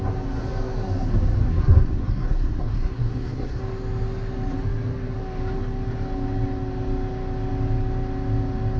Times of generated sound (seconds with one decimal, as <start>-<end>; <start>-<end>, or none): 1.5-3.6